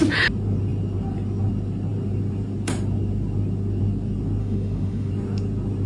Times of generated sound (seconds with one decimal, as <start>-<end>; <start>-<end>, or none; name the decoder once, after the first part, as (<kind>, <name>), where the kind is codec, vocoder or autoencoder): 4.4-5.1 (autoencoder, DAC-VAE)